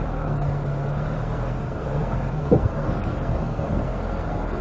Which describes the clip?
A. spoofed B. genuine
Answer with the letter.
A